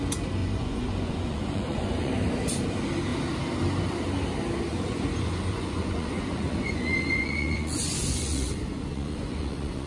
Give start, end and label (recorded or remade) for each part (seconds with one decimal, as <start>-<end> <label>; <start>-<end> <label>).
0.0-0.4 recorded; 0.4-2.1 remade; 2.1-4.7 recorded; 4.7-9.9 remade